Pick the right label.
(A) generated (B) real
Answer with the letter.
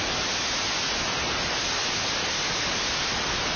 B